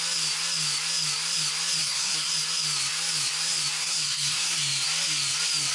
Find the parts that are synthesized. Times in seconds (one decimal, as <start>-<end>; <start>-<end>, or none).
1.8-2.3; 3.8-4.6